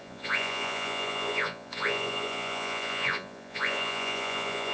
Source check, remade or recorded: remade